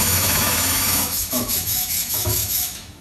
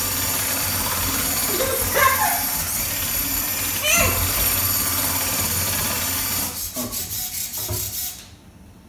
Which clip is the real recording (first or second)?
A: second